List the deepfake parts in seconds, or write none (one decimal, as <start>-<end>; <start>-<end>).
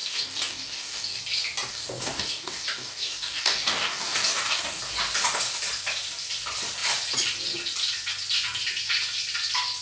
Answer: 0.0-1.2; 1.7-4.8